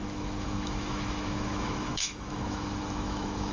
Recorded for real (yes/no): no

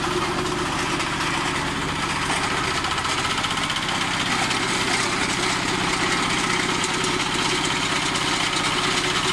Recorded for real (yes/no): yes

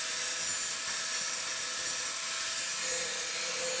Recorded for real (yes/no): yes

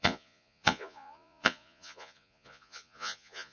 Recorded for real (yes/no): no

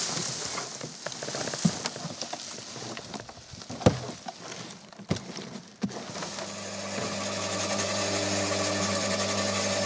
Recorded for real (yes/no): yes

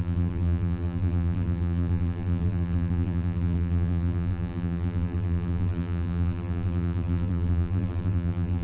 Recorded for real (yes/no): no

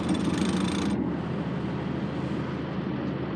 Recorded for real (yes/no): yes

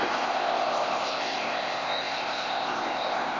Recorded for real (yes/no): no